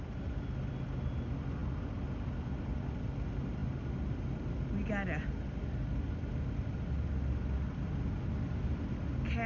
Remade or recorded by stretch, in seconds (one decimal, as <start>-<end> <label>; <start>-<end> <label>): 0.0-9.5 recorded